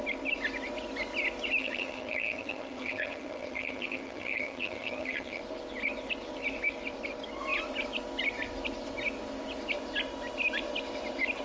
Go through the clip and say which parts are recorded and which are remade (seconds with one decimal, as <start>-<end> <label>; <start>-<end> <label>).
0.0-1.6 recorded; 1.6-5.4 remade; 5.4-11.4 recorded